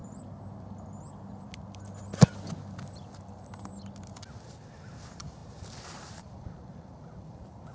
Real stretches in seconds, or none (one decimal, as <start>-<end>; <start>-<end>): 0.0-4.4